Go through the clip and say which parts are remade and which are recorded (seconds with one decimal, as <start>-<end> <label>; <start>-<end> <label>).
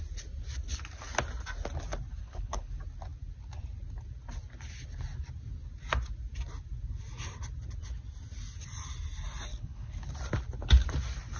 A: 0.0-2.2 recorded; 2.2-2.7 remade; 2.7-9.5 recorded; 9.5-10.1 remade; 10.1-11.4 recorded